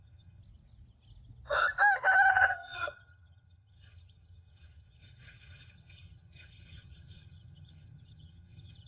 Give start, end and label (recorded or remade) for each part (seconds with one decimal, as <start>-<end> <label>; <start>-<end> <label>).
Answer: 0.0-0.4 remade; 0.4-2.3 recorded; 2.3-8.9 remade